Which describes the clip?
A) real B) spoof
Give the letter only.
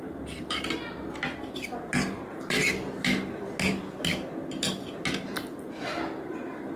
A